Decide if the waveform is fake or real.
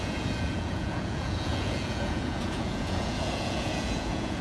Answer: fake